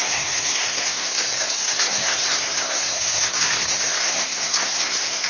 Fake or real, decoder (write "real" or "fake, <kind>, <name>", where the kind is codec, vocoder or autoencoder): fake, codec, SNAC